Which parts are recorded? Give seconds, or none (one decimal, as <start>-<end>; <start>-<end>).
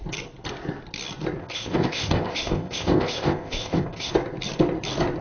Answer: 0.0-1.4; 4.1-5.2